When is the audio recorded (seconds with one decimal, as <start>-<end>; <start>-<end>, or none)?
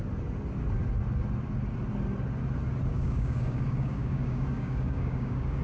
0.0-2.9